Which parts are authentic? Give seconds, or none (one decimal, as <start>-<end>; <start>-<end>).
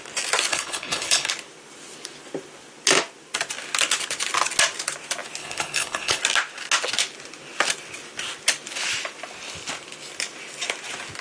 0.0-0.5; 1.3-5.4; 6.2-11.2